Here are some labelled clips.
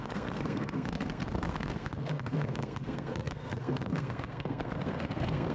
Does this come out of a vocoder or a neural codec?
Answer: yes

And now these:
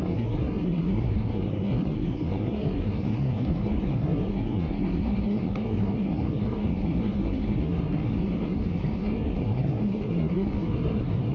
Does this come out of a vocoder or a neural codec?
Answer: yes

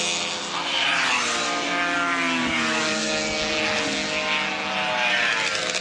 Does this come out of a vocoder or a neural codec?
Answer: no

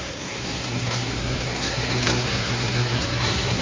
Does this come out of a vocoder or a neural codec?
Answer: yes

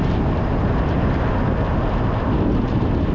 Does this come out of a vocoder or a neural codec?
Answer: no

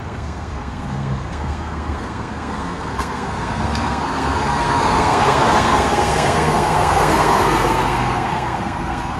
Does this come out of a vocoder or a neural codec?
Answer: yes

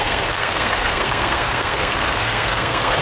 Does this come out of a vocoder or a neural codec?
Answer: yes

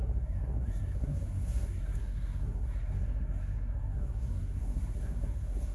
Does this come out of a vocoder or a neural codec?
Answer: yes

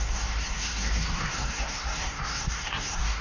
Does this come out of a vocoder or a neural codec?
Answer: yes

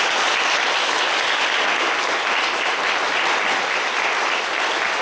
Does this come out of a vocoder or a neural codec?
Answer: no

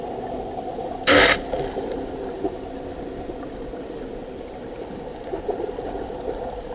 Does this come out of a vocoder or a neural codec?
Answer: no